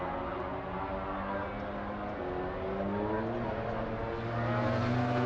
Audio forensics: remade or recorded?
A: recorded